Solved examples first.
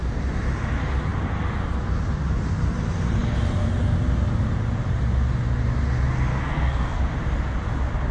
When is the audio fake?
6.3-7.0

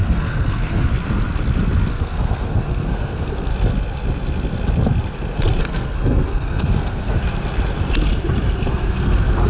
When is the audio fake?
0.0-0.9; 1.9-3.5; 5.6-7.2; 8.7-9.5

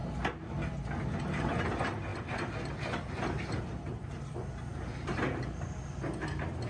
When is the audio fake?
none

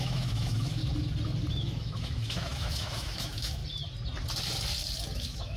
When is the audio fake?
0.0-0.8; 1.5-3.6; 5.1-5.6

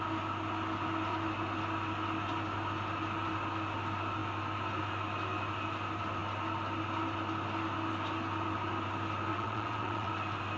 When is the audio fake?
9.3-10.1

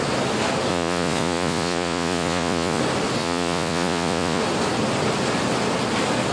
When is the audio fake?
0.7-2.8; 3.2-4.4